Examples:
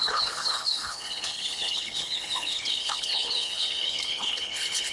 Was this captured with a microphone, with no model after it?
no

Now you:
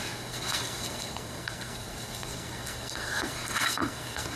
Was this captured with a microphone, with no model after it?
no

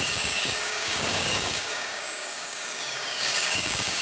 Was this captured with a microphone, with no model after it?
no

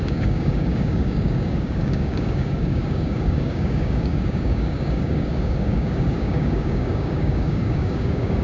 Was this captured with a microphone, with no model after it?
no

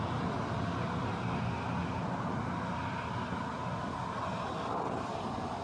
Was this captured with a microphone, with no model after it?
yes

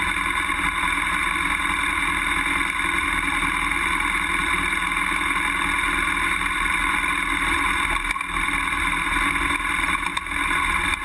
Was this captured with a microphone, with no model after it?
yes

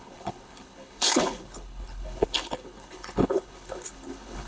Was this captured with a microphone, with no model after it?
no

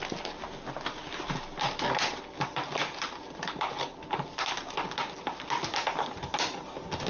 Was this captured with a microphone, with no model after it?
yes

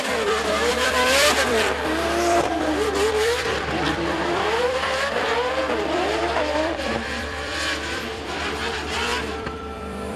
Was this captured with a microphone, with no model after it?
no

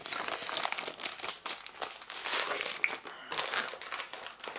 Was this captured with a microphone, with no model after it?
yes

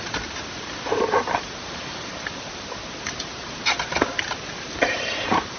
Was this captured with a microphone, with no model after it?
yes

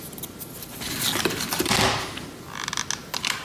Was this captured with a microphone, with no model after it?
yes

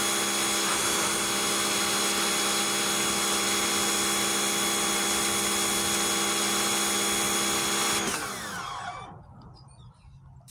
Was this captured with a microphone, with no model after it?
yes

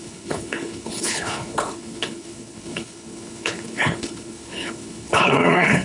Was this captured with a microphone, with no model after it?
no